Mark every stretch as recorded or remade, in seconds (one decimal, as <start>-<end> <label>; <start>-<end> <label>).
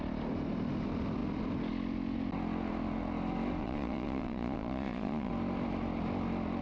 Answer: 0.0-3.6 recorded; 3.6-5.3 remade; 5.3-6.6 recorded